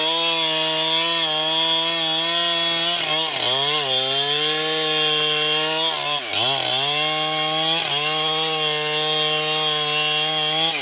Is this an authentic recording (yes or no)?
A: yes